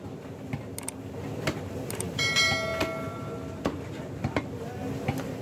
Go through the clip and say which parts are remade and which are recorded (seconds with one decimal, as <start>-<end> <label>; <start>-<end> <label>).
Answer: 0.0-5.4 recorded

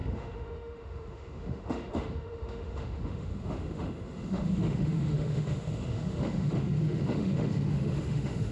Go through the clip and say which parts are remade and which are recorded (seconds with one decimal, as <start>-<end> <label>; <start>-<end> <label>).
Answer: 0.0-8.5 remade

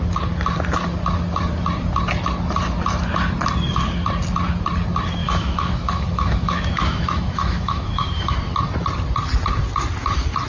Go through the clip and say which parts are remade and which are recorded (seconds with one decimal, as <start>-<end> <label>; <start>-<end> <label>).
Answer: 0.0-5.2 recorded; 5.2-8.3 remade; 8.3-10.5 recorded